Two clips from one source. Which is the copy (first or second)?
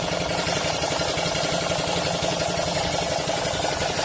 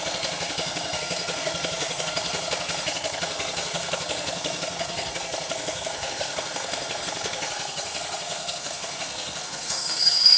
second